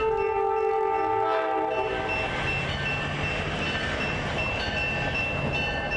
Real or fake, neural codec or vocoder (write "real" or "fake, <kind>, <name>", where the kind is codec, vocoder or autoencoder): real